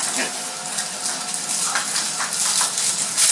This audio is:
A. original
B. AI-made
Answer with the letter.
A